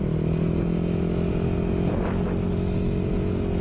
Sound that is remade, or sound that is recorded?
recorded